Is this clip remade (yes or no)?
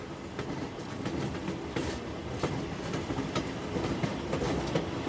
no